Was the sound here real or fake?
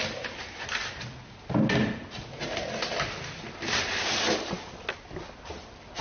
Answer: real